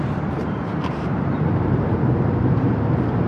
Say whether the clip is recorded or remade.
remade